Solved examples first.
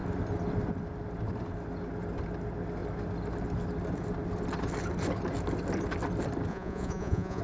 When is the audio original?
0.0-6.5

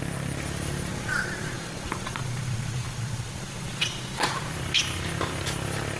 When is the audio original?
0.0-0.9; 4.5-6.0

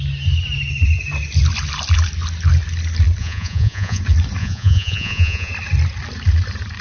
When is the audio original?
0.0-3.2; 4.0-4.4; 5.5-6.8

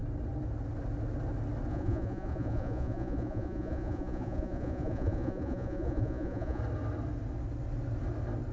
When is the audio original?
0.0-1.7; 6.6-8.5

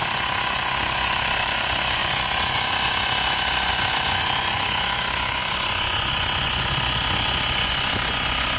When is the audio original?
none